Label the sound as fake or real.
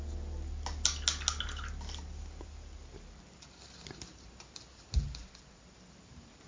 real